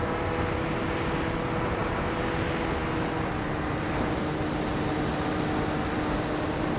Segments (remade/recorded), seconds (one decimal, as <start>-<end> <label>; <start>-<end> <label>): 0.0-6.8 recorded